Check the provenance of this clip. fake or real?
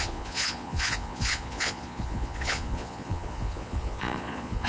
fake